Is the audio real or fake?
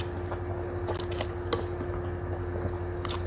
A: real